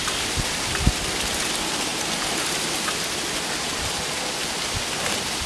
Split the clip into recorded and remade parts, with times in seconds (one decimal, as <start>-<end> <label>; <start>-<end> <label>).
0.0-5.5 recorded